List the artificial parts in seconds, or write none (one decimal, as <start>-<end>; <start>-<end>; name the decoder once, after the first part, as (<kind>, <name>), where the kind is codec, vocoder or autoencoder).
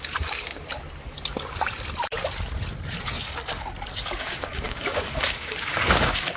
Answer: 0.0-0.5 (codec, DAC); 4.2-6.4